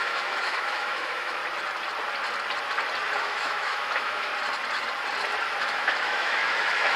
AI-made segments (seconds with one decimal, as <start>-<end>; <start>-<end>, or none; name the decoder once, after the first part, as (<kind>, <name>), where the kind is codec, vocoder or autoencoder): 0.0-1.4 (autoencoder, DAC-VAE); 3.2-4.3; 5.6-7.0